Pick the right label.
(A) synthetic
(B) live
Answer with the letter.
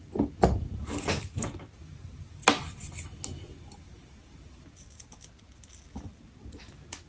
B